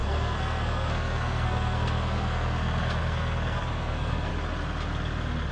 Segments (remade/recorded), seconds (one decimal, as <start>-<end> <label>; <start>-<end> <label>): 0.0-4.3 remade; 4.3-5.5 recorded